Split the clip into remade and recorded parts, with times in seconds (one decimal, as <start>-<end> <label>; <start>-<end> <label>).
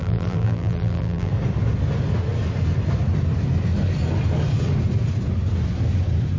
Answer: 0.0-1.3 remade; 1.3-6.4 recorded